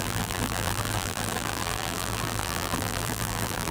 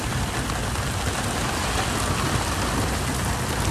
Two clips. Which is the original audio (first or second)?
second